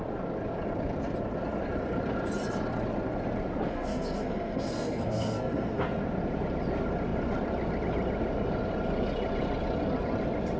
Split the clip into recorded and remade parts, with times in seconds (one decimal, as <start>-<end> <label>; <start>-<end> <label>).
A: 0.0-3.7 recorded; 3.7-5.8 remade; 5.8-10.6 recorded